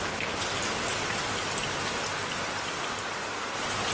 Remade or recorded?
recorded